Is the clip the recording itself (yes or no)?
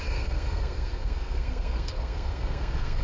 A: no